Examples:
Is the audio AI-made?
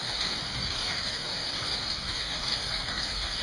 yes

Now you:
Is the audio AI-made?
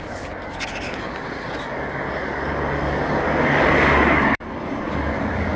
yes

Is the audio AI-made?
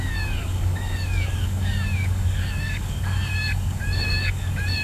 yes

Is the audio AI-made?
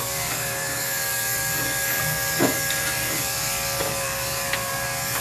yes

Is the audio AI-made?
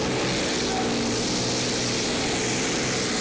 no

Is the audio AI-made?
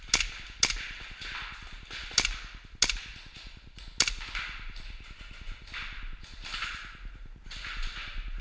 no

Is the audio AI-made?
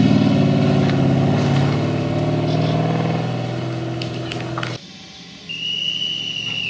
no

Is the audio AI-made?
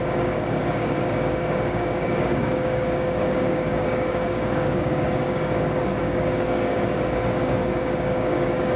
yes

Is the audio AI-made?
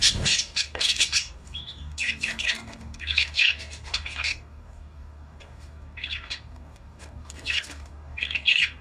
yes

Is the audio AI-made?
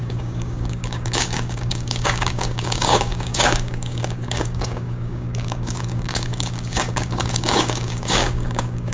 yes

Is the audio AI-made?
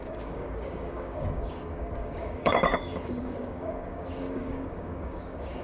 yes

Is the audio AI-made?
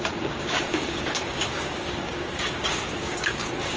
yes